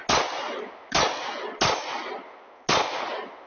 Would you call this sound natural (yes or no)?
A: yes